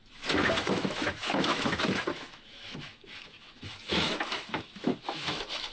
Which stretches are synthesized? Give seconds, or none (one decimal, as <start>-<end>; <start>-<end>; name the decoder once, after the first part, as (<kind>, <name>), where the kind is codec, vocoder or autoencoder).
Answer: 0.0-5.7 (autoencoder, DAC-VAE)